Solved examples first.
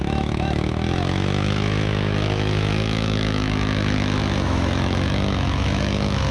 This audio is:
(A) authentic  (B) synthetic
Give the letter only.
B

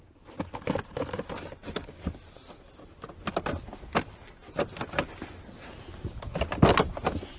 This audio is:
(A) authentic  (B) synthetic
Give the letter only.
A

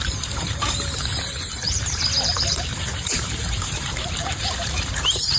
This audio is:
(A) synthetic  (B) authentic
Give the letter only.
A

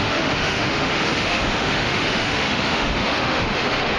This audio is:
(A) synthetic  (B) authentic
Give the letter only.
A